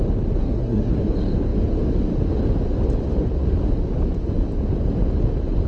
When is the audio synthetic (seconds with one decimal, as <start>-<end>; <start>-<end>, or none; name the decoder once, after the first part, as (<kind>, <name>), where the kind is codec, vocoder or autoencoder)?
0.4-1.0 (codec, SNAC)